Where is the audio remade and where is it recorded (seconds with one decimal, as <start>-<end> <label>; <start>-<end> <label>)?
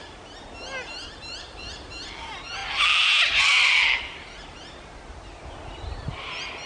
0.0-6.7 recorded